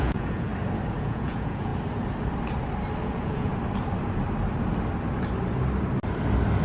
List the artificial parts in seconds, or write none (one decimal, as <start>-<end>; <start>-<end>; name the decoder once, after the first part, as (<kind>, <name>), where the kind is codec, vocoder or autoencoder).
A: 0.0-0.5 (vocoder, Vocos); 1.0-1.7; 3.0-3.5